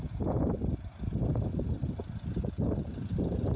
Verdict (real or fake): real